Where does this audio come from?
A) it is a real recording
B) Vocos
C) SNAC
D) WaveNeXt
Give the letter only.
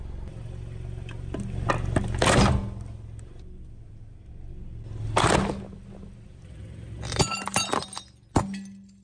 A